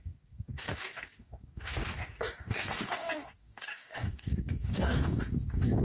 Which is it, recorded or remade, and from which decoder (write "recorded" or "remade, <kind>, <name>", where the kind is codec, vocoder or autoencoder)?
remade, codec, DAC